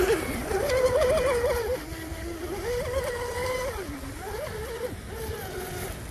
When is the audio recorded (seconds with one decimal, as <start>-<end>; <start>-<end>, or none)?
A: 0.0-6.1